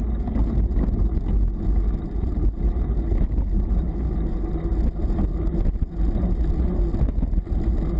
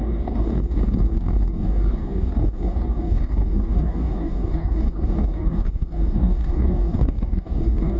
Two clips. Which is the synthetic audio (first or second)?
second